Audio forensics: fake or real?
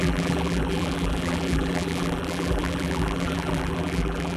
fake